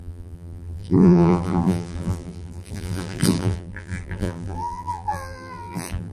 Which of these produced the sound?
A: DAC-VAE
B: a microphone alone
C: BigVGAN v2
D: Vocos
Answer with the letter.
C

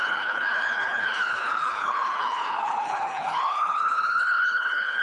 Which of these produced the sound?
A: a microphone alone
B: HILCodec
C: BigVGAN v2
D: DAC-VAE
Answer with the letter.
B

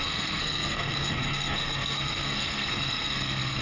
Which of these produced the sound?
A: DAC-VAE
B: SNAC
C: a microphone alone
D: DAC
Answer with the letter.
B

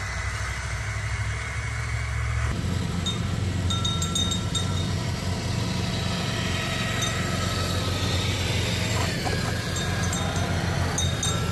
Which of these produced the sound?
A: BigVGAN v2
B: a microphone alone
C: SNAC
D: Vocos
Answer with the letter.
B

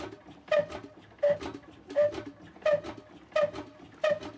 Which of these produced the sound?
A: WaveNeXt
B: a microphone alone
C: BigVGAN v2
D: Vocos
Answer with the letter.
B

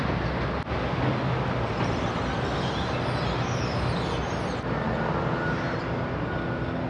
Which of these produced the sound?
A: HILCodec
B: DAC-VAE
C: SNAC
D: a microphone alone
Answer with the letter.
D